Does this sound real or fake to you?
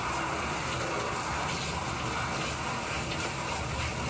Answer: real